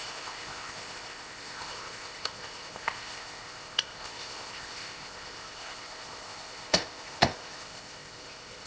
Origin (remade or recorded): remade